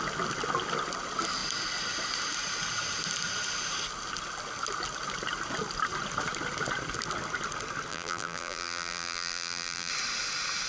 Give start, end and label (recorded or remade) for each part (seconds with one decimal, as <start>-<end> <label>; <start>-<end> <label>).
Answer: 0.0-7.9 recorded; 7.9-9.9 remade; 9.9-10.7 recorded